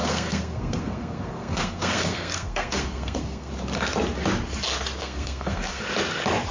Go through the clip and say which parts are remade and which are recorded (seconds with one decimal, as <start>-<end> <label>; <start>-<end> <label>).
0.0-3.5 remade; 3.5-5.0 recorded; 5.0-5.8 remade; 5.8-6.5 recorded